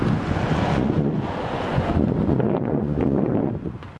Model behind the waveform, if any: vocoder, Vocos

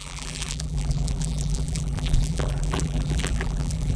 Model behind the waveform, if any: vocoder, BigVGAN v2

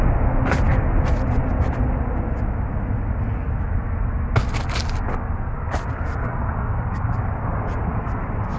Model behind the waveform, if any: none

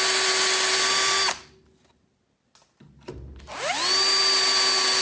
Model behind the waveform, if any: none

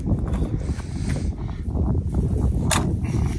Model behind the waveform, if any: none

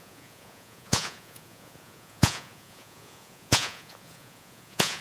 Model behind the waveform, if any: vocoder, Vocos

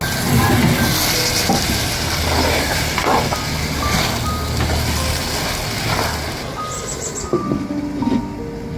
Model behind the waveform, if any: none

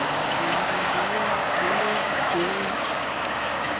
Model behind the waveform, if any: codec, DAC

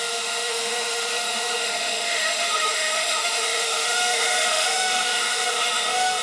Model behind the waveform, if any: autoencoder, DAC-VAE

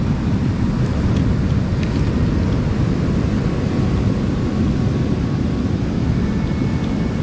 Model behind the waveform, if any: none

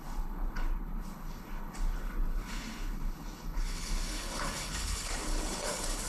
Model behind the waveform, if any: codec, HILCodec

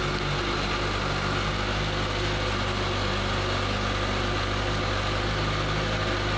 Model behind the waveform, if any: none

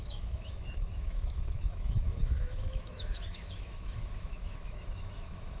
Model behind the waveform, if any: autoencoder, DAC-VAE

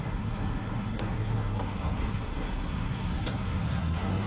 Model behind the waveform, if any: codec, SNAC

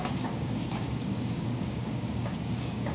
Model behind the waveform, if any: codec, DAC